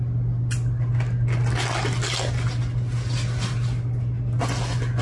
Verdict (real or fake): real